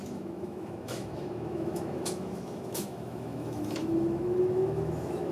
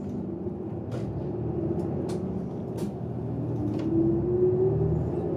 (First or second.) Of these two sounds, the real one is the second